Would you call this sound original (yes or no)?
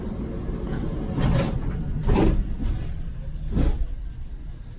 yes